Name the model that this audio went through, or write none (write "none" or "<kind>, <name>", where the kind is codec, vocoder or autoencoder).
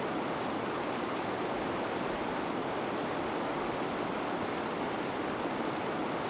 none